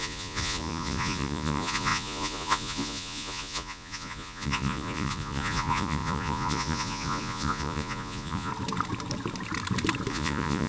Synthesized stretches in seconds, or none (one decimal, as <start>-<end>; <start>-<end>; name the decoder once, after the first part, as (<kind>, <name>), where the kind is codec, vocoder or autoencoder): 0.0-8.5 (vocoder, Vocos); 10.1-10.7